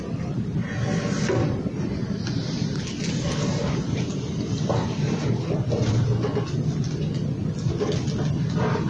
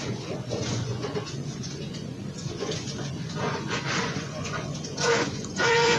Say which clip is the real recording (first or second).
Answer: first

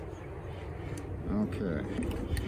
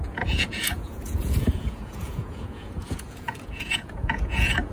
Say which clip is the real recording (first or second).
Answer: first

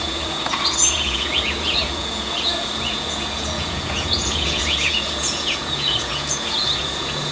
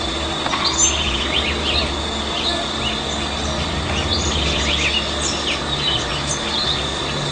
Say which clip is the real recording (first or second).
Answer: second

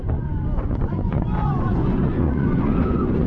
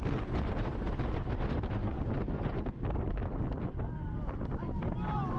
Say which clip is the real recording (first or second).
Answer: second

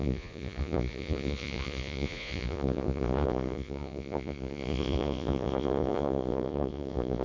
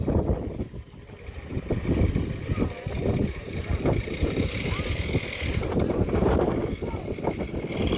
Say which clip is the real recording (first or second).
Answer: second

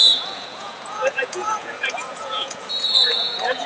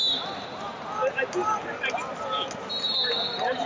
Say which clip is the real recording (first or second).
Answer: second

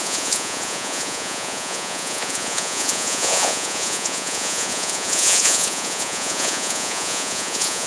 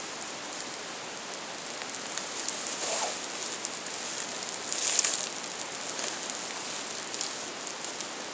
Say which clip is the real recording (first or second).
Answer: second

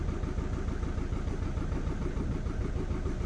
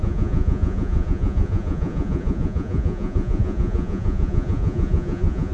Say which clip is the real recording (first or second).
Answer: first